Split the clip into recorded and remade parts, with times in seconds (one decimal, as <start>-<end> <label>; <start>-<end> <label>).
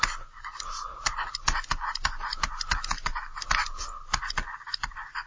0.0-5.3 recorded